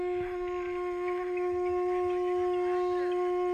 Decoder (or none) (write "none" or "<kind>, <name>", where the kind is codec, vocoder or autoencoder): none